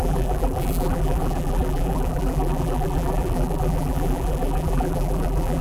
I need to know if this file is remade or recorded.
remade